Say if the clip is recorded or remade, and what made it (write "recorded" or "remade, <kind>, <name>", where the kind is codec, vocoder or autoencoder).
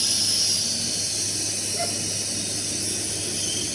recorded